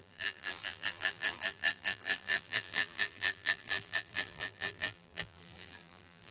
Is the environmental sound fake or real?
fake